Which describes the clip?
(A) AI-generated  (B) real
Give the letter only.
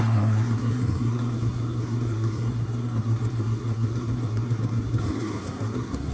A